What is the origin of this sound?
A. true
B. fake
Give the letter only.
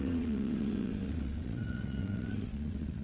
B